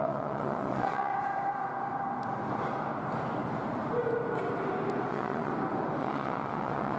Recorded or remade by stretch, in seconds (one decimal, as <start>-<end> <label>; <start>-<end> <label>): 0.0-1.1 remade; 1.1-5.1 recorded; 5.1-5.5 remade; 5.5-6.0 recorded; 6.0-7.0 remade